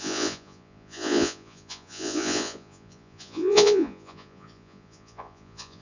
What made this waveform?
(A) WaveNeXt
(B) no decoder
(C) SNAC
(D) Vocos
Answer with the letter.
D